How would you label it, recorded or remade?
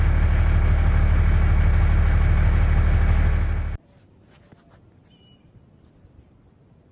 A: recorded